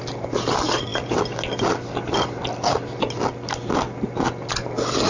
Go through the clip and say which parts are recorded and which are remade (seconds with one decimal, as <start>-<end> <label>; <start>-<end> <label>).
0.0-5.1 recorded